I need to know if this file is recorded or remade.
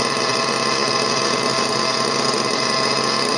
recorded